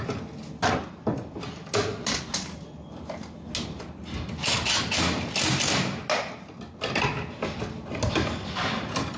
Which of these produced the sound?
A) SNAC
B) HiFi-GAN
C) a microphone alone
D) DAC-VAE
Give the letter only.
C